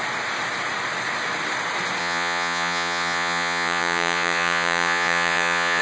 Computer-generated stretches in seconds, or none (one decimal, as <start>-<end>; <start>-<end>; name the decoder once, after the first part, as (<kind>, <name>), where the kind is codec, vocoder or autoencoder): 2.0-5.8 (vocoder, Vocos)